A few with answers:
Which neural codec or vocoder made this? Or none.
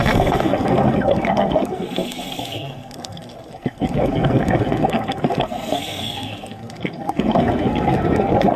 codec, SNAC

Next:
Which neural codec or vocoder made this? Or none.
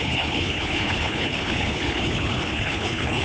codec, HILCodec